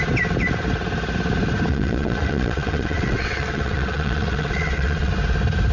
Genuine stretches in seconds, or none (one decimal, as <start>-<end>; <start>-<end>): 0.0-1.7; 5.1-5.7

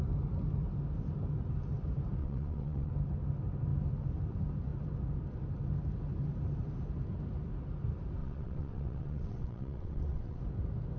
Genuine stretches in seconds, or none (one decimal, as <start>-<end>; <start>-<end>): 0.0-2.2; 2.9-8.2; 10.4-11.0

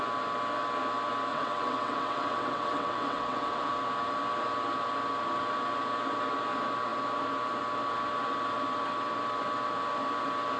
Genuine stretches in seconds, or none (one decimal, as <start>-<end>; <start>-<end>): 0.0-1.3; 3.7-10.6

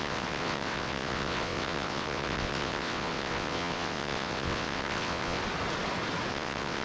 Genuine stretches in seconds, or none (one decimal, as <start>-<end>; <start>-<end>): 5.4-6.3

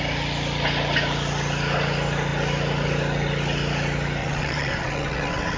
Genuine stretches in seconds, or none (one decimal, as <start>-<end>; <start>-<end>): 0.0-4.2

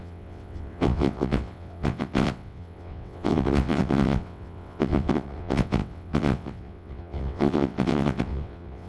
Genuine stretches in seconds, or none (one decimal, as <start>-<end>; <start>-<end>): none

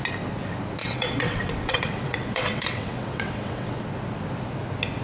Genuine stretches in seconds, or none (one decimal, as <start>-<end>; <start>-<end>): 0.0-0.8; 3.8-5.0